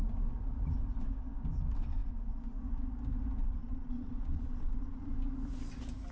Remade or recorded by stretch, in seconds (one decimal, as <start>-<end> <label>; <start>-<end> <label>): 0.0-3.6 recorded; 3.6-5.1 remade; 5.1-6.1 recorded